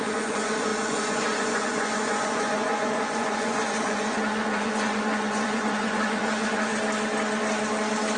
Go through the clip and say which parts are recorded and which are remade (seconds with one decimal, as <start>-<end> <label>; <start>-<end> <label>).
0.0-6.7 remade; 6.7-8.2 recorded